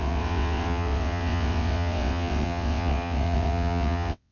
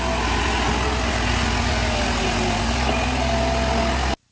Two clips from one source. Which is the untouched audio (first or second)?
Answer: second